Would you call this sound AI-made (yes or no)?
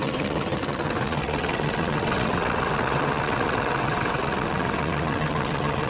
yes